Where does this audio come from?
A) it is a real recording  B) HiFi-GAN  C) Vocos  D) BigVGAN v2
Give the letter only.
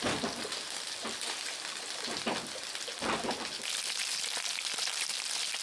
A